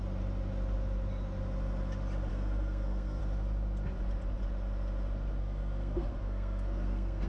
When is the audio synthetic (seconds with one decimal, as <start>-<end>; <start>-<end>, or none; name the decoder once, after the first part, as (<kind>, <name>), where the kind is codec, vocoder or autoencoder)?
2.3-3.2 (codec, SNAC); 5.4-7.3